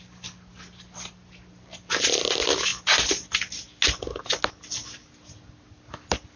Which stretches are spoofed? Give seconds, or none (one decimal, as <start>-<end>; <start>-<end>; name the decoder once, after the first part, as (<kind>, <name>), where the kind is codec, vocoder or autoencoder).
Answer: none